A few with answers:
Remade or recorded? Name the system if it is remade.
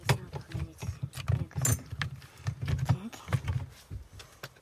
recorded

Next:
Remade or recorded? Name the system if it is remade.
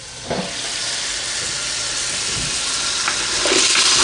recorded